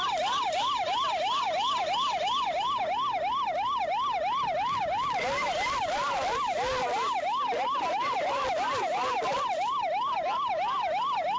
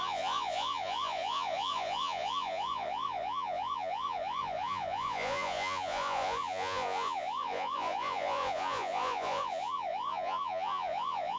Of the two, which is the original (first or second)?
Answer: first